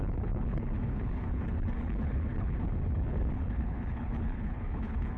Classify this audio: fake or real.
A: fake